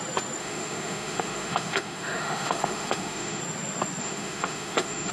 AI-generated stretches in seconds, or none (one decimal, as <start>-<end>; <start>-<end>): 0.4-3.4; 4.0-5.1